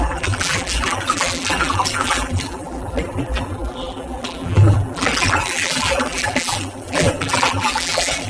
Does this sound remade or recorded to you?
remade